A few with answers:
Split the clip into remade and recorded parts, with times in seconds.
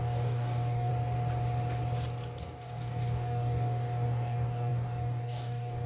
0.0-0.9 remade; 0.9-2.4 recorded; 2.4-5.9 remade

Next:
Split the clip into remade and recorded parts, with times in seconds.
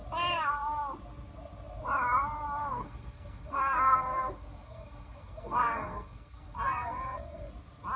0.0-2.7 recorded; 2.7-7.5 remade; 7.5-8.0 recorded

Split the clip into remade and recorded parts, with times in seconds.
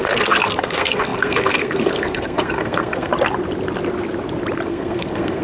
0.0-3.1 remade; 3.1-4.7 recorded; 4.7-5.4 remade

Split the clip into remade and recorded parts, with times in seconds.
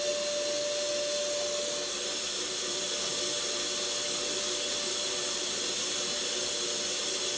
0.0-7.4 recorded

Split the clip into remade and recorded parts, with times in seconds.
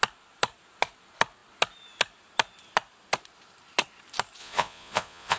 0.0-4.4 recorded; 4.4-5.4 remade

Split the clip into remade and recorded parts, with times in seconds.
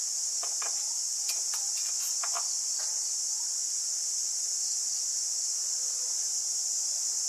0.0-5.6 recorded; 5.6-6.3 remade; 6.3-7.3 recorded